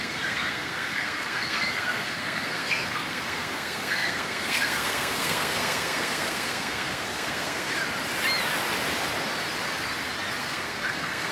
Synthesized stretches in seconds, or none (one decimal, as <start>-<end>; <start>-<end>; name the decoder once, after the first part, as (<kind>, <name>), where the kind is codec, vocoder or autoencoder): 0.0-7.7 (codec, SNAC); 10.4-11.3